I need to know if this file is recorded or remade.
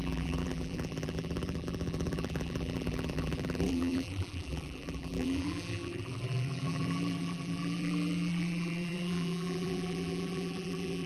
remade